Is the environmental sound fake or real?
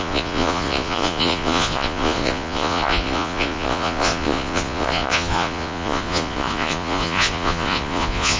fake